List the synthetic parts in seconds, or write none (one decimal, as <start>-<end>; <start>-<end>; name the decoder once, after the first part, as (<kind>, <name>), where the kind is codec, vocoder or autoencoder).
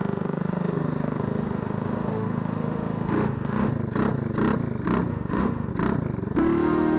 0.0-3.7 (autoencoder, DAC-VAE); 5.1-5.7; 6.4-7.0